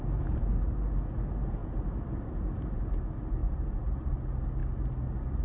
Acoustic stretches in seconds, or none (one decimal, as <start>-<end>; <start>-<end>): 0.0-3.4; 4.1-5.4